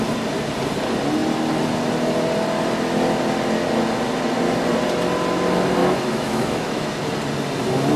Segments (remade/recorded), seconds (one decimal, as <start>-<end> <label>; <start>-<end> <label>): 0.0-5.8 recorded; 5.8-6.9 remade; 6.9-8.0 recorded

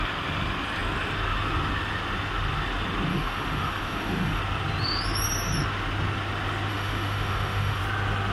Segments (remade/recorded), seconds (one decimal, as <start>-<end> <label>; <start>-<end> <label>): 0.0-3.1 recorded; 3.1-4.4 remade; 4.4-6.7 recorded; 6.7-7.8 remade; 7.8-8.3 recorded

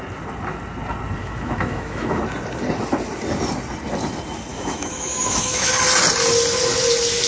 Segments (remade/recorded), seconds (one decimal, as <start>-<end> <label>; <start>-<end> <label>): 0.0-1.2 recorded; 1.2-2.2 remade; 2.2-4.5 recorded; 4.5-5.7 remade; 5.7-7.3 recorded